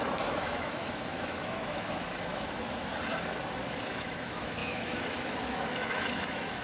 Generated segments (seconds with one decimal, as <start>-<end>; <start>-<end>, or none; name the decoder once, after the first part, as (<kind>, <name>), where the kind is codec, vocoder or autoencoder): 0.0-2.9 (autoencoder, DAC-VAE); 3.8-6.6